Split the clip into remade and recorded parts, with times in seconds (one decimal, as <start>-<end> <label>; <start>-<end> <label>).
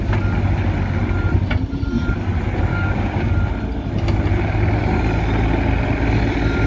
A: 0.0-2.7 recorded; 2.7-3.3 remade; 3.3-6.7 recorded